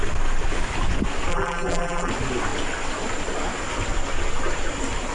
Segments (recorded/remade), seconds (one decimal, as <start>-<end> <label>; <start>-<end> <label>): 0.0-1.3 recorded; 1.3-2.1 remade; 2.1-5.1 recorded